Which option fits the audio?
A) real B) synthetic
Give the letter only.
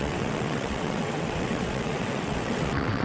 B